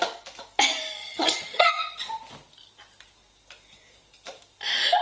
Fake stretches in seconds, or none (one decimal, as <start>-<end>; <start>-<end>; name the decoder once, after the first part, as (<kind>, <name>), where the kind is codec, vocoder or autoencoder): 1.0-1.8 (vocoder, HiFi-GAN)